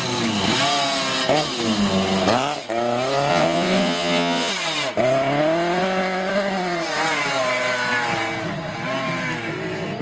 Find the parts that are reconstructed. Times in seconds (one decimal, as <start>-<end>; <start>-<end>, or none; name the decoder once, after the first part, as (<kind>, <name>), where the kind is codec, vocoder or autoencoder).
3.3-4.5 (vocoder, WaveNeXt)